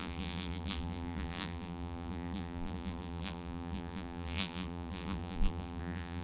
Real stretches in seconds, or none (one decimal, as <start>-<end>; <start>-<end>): none